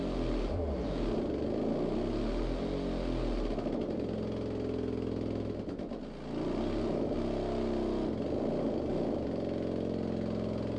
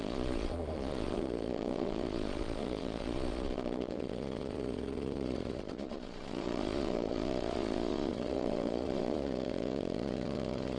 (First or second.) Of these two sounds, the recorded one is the first